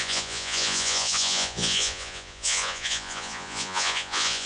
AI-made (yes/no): yes